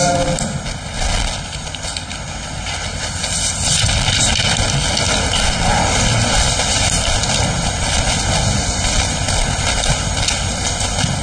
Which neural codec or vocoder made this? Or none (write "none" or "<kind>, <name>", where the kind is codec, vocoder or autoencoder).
none